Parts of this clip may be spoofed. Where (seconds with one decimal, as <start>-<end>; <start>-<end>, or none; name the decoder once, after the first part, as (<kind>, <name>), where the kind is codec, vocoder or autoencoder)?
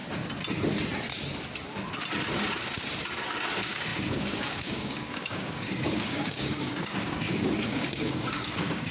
3.5-8.9 (codec, DAC)